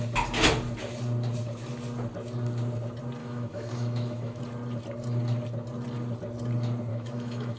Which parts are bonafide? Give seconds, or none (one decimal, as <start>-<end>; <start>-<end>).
0.0-3.2; 4.4-6.9